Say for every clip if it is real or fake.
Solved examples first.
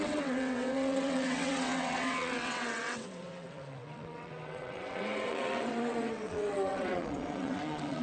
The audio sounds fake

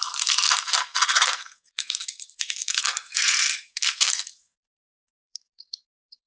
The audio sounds fake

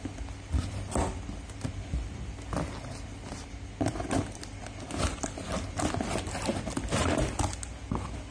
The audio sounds real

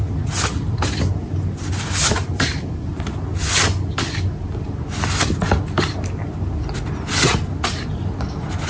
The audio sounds real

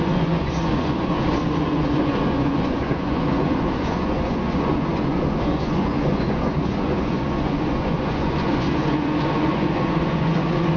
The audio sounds fake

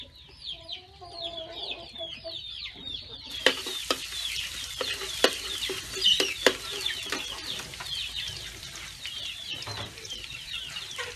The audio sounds fake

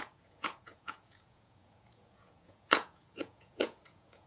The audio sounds fake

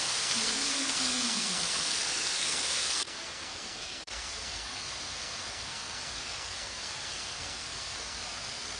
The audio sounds fake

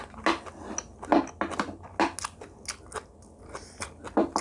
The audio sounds real